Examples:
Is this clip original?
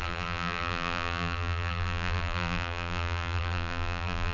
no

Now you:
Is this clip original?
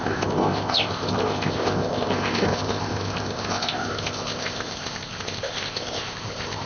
no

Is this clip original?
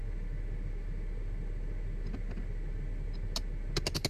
yes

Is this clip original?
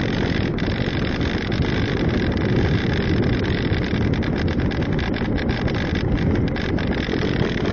yes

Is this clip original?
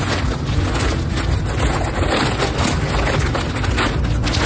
yes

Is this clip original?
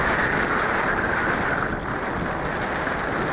yes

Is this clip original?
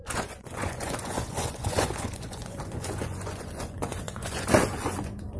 no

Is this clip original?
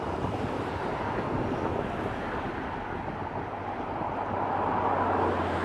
yes